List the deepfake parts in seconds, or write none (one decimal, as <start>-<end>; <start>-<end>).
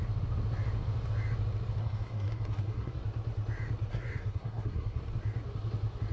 1.8-3.0; 3.9-5.0